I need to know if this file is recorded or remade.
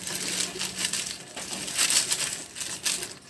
recorded